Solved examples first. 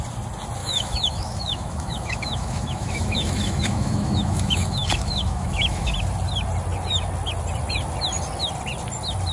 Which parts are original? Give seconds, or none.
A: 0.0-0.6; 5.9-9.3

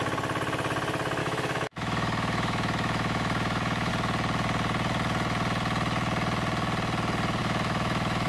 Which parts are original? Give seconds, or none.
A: 0.0-1.2; 3.9-7.4

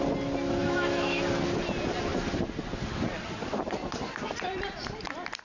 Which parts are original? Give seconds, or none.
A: 0.0-0.6; 1.2-5.4